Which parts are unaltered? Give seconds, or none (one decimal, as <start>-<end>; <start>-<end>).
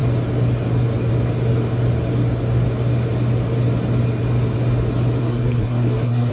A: 0.0-5.2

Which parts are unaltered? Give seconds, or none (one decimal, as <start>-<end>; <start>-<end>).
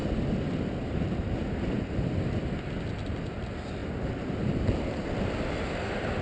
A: 0.0-6.2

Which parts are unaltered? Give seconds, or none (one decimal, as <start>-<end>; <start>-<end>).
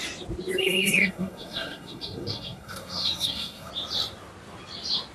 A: 0.0-0.6; 3.7-5.1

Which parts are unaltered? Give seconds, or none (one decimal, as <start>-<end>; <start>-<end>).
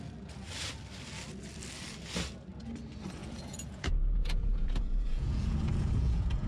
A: 0.0-3.2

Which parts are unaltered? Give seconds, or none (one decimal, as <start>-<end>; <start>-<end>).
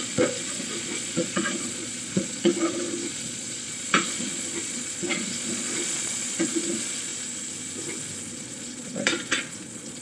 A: 7.1-8.3